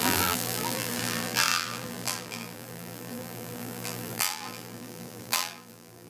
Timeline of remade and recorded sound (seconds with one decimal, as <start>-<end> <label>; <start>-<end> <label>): 0.0-6.1 remade